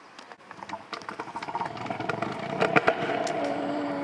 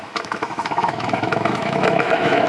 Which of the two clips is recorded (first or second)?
first